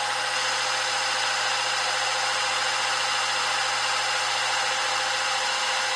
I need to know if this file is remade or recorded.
recorded